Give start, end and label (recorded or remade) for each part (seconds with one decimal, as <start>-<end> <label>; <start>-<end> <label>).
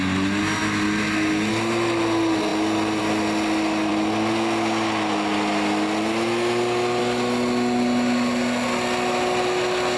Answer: 0.0-10.0 recorded